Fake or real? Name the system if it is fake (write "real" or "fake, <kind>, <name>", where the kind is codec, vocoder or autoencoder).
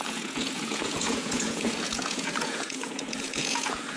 fake, vocoder, Vocos